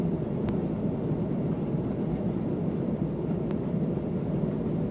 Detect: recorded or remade remade